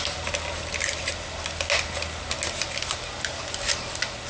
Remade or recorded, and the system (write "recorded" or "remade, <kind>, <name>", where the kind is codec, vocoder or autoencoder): recorded